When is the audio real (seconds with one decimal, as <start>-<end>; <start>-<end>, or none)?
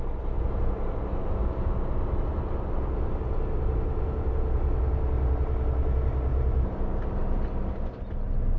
0.0-1.2; 1.7-8.6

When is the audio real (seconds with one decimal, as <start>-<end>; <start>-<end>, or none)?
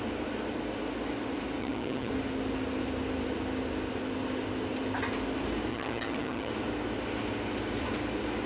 0.0-1.6; 2.1-5.7; 6.5-8.5